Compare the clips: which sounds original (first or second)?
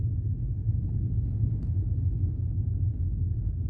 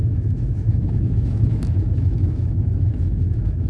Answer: first